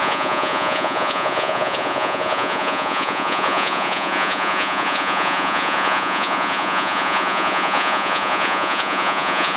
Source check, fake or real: fake